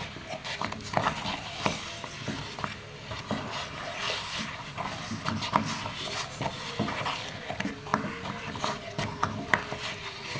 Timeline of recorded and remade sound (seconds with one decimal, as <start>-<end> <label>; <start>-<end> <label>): 0.0-10.4 recorded

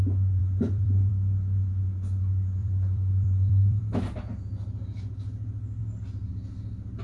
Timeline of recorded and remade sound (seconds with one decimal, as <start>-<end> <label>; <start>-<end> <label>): 0.0-0.4 recorded; 0.4-1.1 remade; 1.1-2.6 recorded; 2.6-3.8 remade; 3.8-7.0 recorded

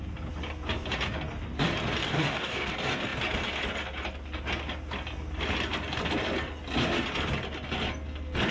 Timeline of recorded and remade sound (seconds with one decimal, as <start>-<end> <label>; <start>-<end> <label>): 0.0-2.0 recorded; 2.0-2.7 remade; 2.7-8.5 recorded

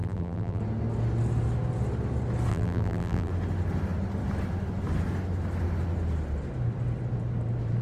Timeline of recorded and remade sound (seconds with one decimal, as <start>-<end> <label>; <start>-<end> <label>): 0.0-0.6 remade; 0.6-2.5 recorded; 2.5-3.3 remade; 3.3-7.8 recorded

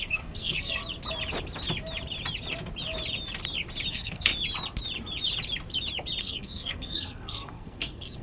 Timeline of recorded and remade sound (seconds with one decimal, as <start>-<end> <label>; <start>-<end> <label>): 0.0-0.8 remade; 0.8-3.9 recorded; 3.9-4.3 remade; 4.3-6.2 recorded; 6.2-8.2 remade

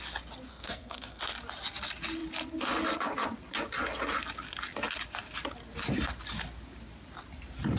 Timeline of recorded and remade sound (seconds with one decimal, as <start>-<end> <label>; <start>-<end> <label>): 0.0-0.5 recorded; 0.5-1.2 remade; 1.2-7.8 recorded